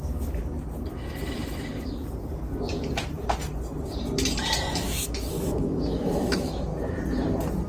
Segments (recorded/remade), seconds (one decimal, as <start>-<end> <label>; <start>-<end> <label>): 0.0-0.4 remade; 0.4-4.7 recorded; 4.7-6.7 remade; 6.7-7.7 recorded